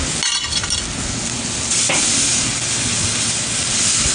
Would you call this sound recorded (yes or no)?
yes